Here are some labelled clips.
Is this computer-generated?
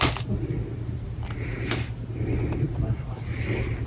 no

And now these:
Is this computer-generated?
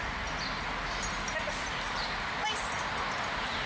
no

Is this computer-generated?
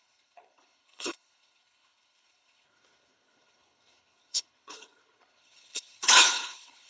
yes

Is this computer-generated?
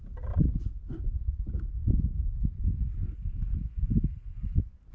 no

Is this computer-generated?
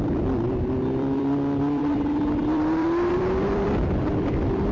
yes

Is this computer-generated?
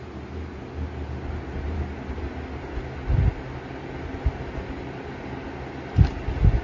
no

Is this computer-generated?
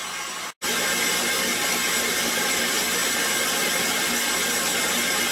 no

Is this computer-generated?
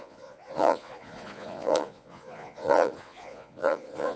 yes